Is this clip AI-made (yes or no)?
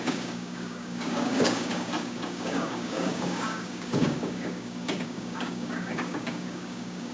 yes